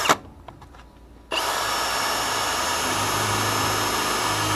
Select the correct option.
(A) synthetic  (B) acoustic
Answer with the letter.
B